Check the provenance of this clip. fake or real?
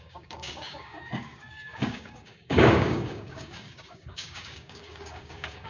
fake